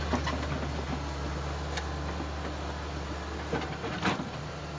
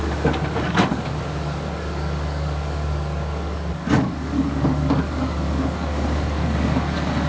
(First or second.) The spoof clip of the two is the second